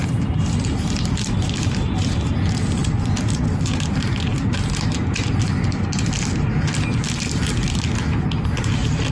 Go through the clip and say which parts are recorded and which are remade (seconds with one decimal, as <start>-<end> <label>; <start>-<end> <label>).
0.0-2.3 remade; 2.3-2.8 recorded; 2.8-3.4 remade; 3.4-4.3 recorded; 4.3-6.3 remade; 6.3-9.1 recorded